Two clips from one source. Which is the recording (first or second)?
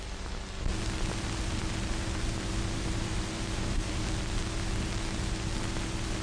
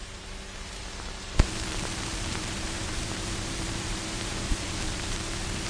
first